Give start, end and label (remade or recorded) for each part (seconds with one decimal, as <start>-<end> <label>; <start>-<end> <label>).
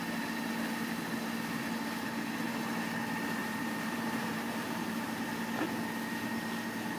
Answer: 0.0-3.4 recorded; 3.4-5.3 remade; 5.3-7.0 recorded